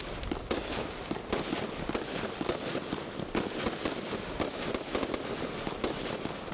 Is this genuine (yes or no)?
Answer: yes